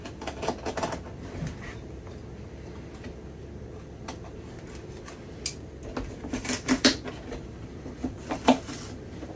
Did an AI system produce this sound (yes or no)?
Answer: no